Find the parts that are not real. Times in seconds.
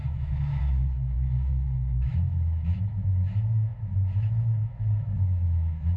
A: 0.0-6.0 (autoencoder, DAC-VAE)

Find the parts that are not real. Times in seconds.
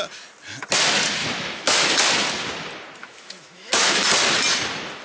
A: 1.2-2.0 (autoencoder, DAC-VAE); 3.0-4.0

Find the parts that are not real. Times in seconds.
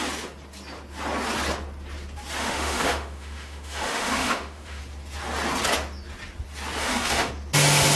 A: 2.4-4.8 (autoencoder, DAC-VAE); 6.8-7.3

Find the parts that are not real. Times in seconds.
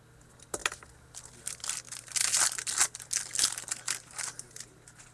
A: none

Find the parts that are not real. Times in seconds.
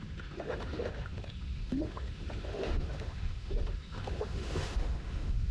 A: 0.0-5.5 (autoencoder, DAC-VAE)